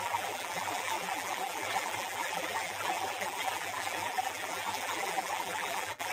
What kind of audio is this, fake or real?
fake